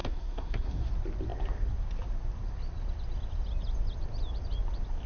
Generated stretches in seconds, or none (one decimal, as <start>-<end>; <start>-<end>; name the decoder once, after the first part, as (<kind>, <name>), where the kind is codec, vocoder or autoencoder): 0.0-0.9 (codec, SNAC)